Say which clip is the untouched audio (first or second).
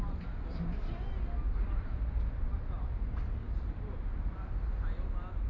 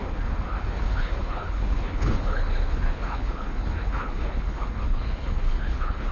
first